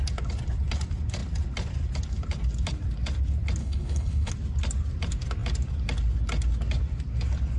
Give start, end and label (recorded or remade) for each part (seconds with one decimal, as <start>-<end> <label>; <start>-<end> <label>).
0.0-3.6 recorded; 3.6-4.3 remade; 4.3-7.6 recorded